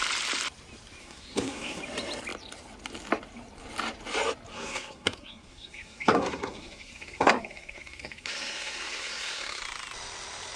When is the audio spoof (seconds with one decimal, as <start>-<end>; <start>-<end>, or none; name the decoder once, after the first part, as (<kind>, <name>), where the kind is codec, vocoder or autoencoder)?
1.0-1.8 (codec, SNAC); 4.5-9.6